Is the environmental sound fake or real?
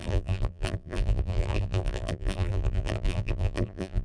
fake